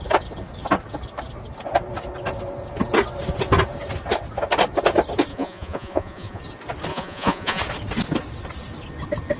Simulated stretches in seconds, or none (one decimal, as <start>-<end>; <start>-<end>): 5.3-6.4; 6.9-7.6